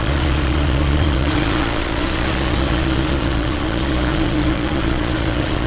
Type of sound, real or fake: fake